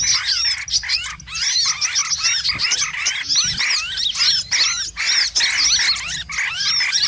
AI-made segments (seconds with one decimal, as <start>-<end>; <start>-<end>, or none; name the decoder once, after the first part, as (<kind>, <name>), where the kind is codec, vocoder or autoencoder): none

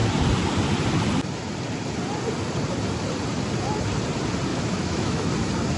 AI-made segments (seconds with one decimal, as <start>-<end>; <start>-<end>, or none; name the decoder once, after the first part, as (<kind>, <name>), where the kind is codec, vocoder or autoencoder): 4.5-5.3 (autoencoder, DAC-VAE)

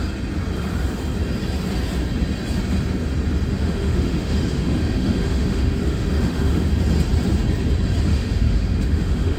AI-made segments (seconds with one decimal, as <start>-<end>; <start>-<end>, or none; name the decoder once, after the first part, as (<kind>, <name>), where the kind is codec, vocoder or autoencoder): 3.5-6.7 (autoencoder, DAC-VAE); 8.1-9.4

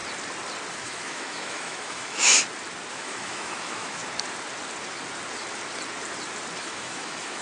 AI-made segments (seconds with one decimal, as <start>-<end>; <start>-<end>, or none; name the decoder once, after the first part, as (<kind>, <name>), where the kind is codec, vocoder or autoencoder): 0.7-2.3 (autoencoder, DAC-VAE); 2.9-4.0; 6.6-7.4